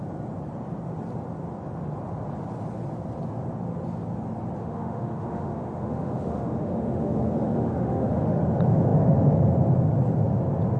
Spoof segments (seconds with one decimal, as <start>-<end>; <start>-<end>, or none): 4.6-8.4